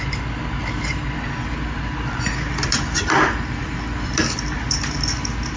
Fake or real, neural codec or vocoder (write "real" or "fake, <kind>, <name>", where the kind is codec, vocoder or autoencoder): real